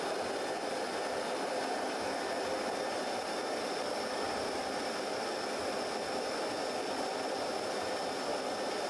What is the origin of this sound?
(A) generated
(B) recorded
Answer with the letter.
B